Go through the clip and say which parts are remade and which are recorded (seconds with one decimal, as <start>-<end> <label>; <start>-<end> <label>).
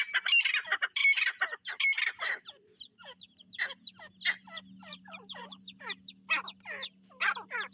0.0-1.0 recorded; 1.0-1.7 remade; 1.7-4.9 recorded; 4.9-5.8 remade; 5.8-7.7 recorded